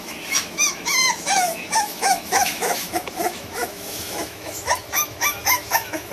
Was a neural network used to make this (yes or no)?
yes